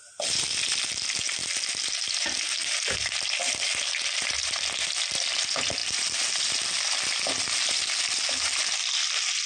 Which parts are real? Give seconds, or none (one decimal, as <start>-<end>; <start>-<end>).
0.0-9.5